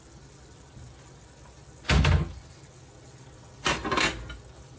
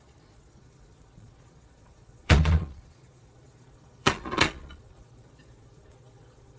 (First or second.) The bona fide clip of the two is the first